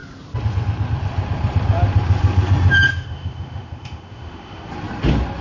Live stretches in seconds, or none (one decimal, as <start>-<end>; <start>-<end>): 0.0-2.9; 4.7-5.4